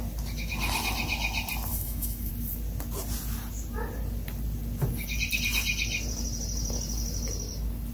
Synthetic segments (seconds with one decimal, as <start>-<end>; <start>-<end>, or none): 1.7-2.3